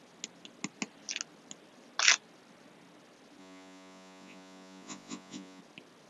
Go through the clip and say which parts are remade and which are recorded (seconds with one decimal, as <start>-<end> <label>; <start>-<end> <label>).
0.0-3.4 recorded; 3.4-5.6 remade; 5.6-6.1 recorded